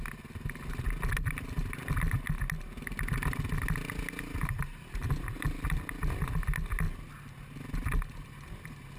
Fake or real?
real